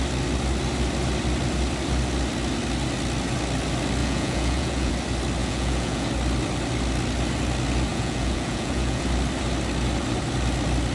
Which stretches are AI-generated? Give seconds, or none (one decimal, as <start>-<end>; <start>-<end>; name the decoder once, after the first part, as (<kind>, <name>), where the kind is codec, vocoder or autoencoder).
4.0-4.9 (vocoder, Vocos); 5.4-6.1; 7.9-9.0